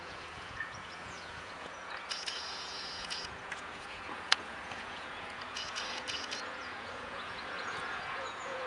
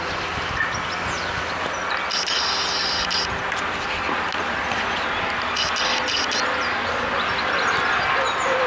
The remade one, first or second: first